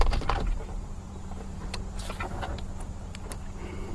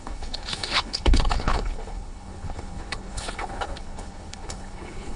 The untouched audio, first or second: first